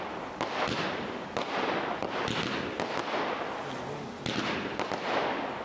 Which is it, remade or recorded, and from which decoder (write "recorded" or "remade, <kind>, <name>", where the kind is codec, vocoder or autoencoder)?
recorded